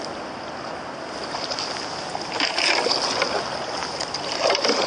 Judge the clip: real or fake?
real